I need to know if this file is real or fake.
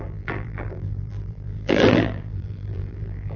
fake